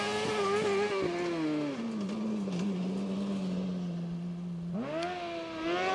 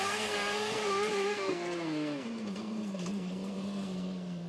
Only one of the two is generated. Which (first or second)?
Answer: second